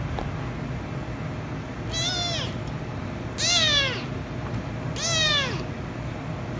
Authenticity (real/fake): real